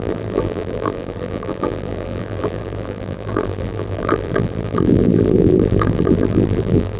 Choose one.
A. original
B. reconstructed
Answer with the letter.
B